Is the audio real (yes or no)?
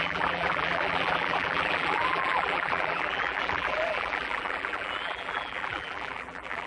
no